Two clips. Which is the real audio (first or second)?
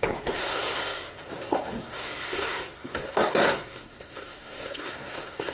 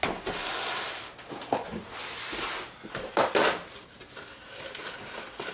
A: second